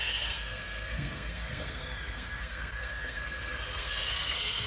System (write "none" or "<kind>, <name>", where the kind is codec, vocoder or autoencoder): codec, SNAC